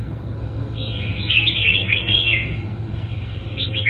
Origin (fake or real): fake